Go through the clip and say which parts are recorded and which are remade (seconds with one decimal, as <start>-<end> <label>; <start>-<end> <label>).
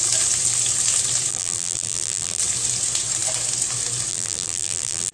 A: 0.0-1.3 recorded; 1.3-2.4 remade; 2.4-4.1 recorded; 4.1-5.1 remade